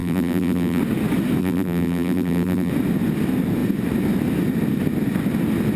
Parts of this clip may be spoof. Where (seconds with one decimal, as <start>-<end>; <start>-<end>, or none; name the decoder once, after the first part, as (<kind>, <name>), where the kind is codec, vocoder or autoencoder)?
0.0-0.8 (vocoder, BigVGAN v2); 1.4-2.7

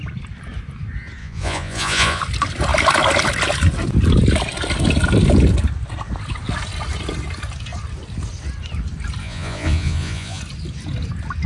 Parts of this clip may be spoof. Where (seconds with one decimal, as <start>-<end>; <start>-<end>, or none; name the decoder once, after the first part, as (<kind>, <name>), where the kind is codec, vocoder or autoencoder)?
1.2-2.2 (vocoder, Vocos); 9.2-10.4